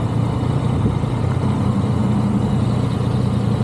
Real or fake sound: real